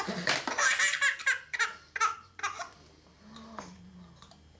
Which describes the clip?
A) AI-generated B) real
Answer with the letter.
B